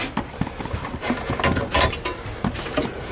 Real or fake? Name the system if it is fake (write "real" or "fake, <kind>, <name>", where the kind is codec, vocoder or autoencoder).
real